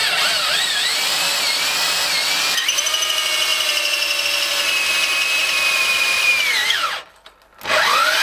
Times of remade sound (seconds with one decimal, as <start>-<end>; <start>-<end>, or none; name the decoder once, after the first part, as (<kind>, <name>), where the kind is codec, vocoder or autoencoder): 5.4-6.3 (vocoder, BigVGAN v2)